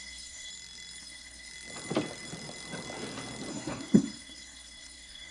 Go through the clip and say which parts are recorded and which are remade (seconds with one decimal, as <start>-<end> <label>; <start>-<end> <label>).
0.0-0.5 remade; 0.5-1.0 recorded; 1.0-1.5 remade; 1.5-3.5 recorded; 3.5-5.3 remade